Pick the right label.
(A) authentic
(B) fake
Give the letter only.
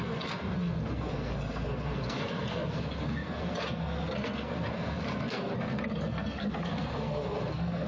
B